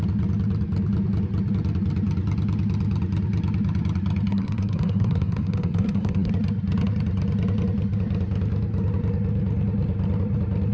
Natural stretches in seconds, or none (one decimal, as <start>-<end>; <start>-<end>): 0.0-4.3; 6.3-10.7